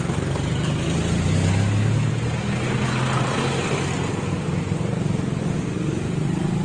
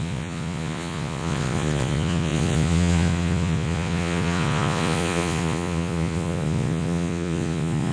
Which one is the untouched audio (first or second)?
first